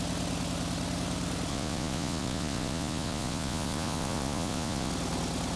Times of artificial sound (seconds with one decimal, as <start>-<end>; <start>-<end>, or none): 1.5-4.9

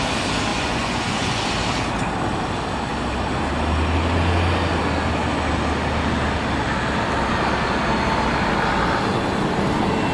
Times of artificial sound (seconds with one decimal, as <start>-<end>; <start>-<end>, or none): 0.5-1.4

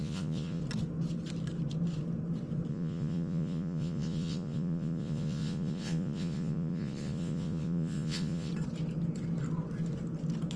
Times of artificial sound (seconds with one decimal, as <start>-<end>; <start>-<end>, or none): 0.0-0.6; 2.7-8.5

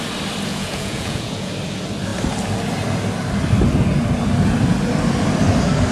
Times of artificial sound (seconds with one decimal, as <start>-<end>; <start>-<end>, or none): 0.5-1.5

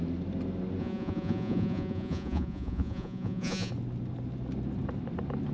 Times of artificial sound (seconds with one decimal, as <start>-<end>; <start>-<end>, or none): 0.8-3.7

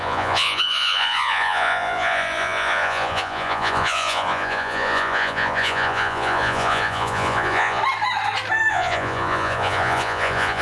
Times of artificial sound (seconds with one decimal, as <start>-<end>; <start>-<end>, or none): 0.0-7.8; 8.7-10.6

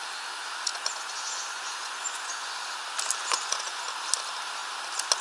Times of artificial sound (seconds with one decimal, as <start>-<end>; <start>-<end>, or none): 0.7-2.5; 3.2-3.8